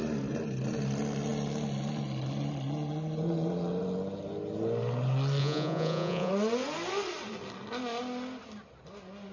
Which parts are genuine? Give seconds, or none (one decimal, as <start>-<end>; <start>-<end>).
0.0-5.4; 6.3-9.3